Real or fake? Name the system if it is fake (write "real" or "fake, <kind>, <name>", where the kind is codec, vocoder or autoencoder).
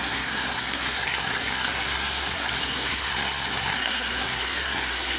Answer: fake, codec, SNAC